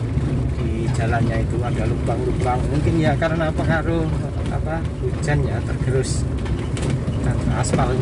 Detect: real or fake real